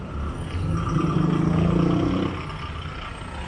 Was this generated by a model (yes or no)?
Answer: no